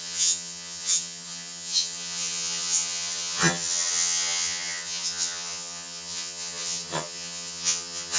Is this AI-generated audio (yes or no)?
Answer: yes